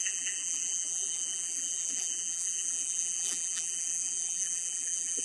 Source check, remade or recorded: remade